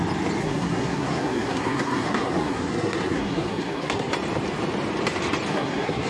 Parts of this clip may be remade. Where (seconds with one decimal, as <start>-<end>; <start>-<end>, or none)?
0.4-4.1; 5.5-6.1